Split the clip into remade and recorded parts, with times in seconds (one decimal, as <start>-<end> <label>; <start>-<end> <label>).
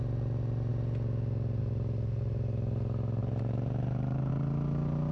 0.0-3.2 recorded; 3.2-4.3 remade; 4.3-5.1 recorded